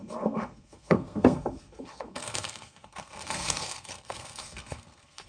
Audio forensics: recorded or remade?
remade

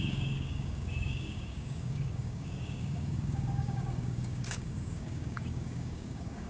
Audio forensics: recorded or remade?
remade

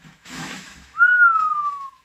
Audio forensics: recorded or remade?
remade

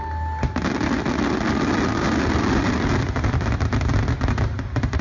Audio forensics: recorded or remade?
recorded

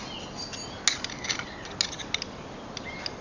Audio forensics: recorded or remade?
recorded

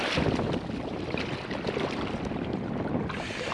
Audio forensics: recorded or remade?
recorded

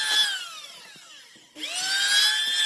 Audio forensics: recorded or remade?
recorded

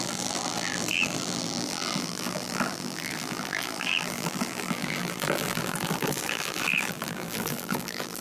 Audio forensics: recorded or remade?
remade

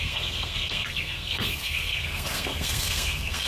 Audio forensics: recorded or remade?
remade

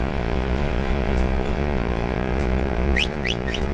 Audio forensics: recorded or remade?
remade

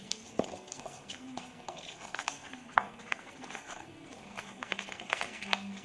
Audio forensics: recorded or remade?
remade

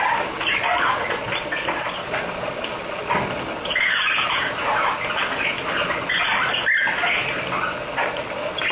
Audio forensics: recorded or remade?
recorded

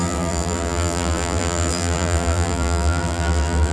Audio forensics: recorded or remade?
remade